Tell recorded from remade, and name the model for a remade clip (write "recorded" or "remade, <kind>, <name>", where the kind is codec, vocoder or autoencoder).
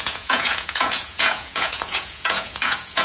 remade, vocoder, Vocos